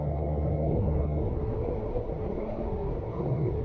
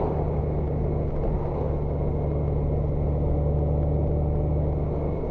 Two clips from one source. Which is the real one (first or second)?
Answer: second